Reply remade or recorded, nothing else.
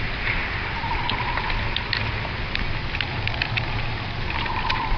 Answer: recorded